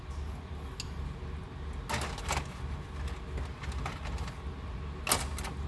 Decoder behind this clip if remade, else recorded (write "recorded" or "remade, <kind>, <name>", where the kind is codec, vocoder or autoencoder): recorded